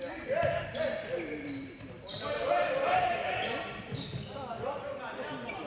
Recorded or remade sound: recorded